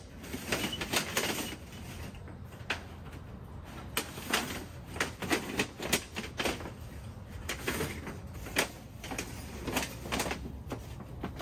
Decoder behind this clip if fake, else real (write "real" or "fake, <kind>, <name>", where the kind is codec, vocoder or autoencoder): real